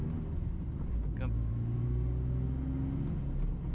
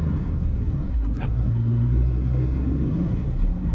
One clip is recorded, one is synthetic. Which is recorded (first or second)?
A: first